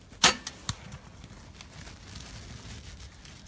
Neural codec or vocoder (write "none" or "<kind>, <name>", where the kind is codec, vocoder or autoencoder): none